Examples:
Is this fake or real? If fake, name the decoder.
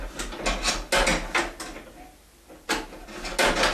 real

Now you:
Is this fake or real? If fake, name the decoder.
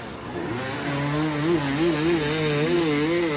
real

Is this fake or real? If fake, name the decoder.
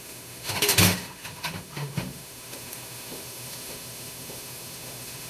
fake, autoencoder, DAC-VAE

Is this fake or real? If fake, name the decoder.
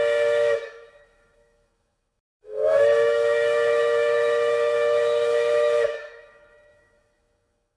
fake, autoencoder, DAC-VAE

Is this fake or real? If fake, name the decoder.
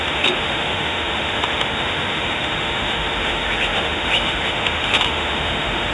fake, autoencoder, DAC-VAE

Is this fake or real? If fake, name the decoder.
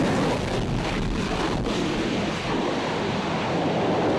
real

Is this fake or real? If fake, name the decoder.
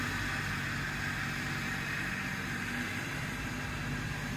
real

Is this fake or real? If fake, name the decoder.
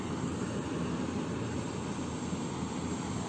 real